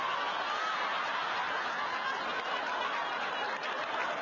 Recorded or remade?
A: recorded